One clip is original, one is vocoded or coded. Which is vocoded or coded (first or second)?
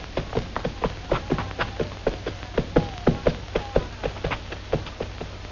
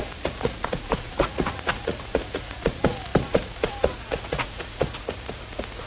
second